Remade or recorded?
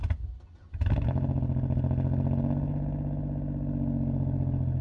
recorded